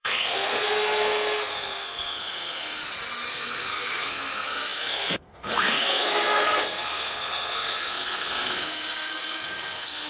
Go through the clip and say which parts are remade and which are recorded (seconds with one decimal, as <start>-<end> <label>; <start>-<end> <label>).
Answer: 0.0-2.8 remade; 2.8-3.3 recorded; 3.3-10.1 remade